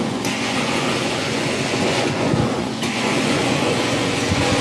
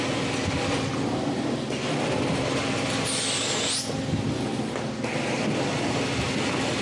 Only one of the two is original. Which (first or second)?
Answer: second